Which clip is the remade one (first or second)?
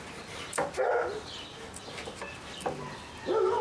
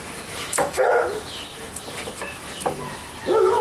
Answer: second